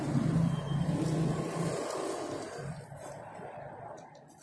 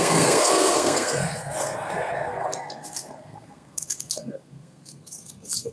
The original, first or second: first